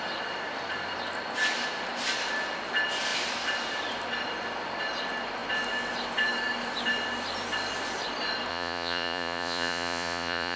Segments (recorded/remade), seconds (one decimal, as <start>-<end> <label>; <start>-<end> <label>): 0.0-8.5 recorded; 8.5-10.6 remade